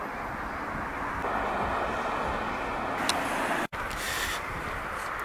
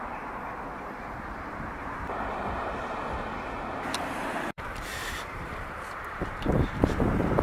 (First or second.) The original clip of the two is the first